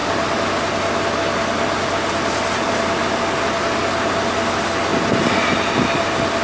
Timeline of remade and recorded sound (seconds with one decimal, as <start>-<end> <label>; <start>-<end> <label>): 0.0-6.4 recorded